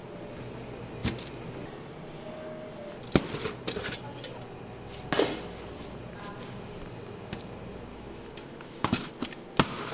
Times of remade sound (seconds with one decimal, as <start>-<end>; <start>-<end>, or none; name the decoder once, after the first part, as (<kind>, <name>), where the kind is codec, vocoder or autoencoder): 7.9-9.1 (autoencoder, DAC-VAE)